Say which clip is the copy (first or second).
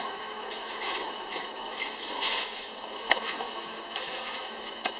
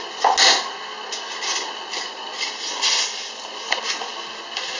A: first